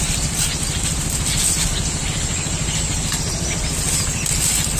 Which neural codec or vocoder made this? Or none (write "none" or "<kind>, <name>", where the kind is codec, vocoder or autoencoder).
none